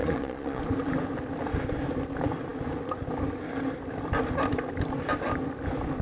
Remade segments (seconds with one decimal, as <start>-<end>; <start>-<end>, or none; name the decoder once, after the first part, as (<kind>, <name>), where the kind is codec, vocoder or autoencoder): 0.0-0.6 (vocoder, Vocos)